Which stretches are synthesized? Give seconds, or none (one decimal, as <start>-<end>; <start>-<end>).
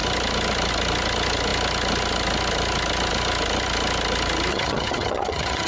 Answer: 4.5-5.7